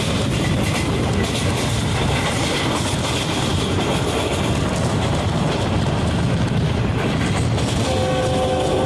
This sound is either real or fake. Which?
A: real